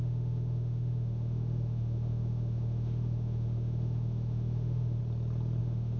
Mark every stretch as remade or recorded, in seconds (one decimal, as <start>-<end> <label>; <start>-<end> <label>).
0.0-5.0 remade; 5.0-5.6 recorded; 5.6-6.0 remade